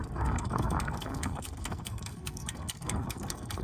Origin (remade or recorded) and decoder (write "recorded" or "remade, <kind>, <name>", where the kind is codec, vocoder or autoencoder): remade, codec, SNAC